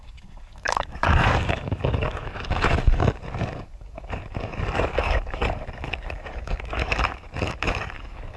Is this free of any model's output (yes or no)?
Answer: no